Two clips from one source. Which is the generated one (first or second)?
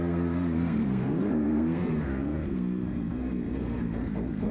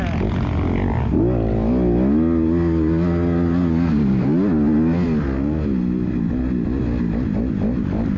first